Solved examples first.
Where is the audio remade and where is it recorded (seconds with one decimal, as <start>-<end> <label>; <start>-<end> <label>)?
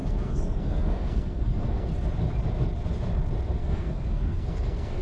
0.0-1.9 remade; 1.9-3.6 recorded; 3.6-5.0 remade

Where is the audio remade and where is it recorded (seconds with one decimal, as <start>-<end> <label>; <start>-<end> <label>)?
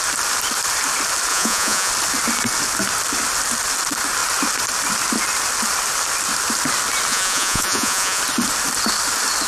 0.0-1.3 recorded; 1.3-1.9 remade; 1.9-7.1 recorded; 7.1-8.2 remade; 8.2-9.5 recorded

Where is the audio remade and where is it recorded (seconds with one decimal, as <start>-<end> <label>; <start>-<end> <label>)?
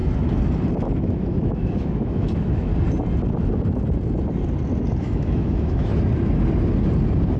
0.0-1.0 recorded; 1.0-2.7 remade; 2.7-5.0 recorded; 5.0-5.9 remade; 5.9-7.4 recorded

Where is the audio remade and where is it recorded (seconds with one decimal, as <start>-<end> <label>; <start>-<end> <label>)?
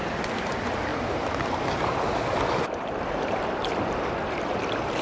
0.0-5.0 recorded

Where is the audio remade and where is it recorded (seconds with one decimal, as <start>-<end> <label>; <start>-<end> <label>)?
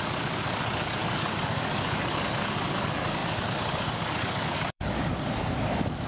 0.0-6.1 remade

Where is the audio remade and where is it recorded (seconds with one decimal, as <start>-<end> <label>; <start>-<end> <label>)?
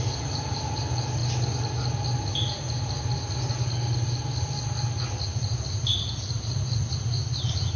0.0-7.8 recorded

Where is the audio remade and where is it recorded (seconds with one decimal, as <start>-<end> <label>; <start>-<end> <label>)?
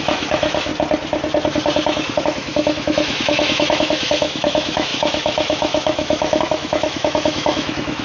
0.0-0.7 remade; 0.7-2.2 recorded; 2.2-8.0 remade